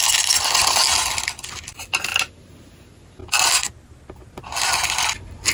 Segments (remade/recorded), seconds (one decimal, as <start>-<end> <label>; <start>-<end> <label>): 0.0-5.5 recorded